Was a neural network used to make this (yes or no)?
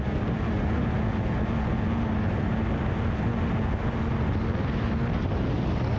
no